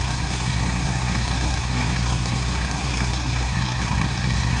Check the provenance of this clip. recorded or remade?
remade